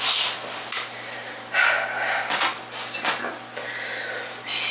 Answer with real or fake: real